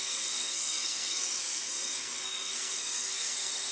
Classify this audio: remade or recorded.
remade